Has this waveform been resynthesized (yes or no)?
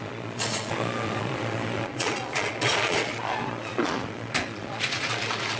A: yes